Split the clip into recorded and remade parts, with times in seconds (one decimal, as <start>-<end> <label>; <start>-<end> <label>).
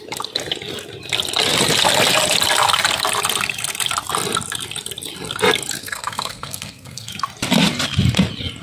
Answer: 0.0-5.8 recorded; 5.8-7.1 remade; 7.1-8.6 recorded